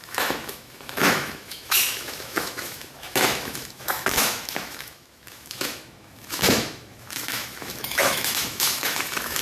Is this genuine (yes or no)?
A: no